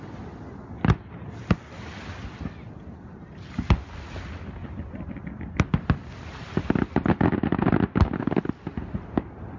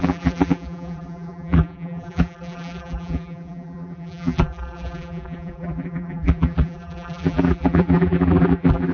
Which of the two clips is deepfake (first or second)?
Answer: second